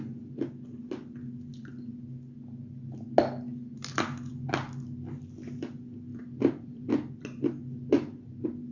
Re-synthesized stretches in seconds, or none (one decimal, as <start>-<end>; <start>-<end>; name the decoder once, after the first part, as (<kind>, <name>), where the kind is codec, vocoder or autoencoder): 6.1-6.9 (vocoder, BigVGAN v2)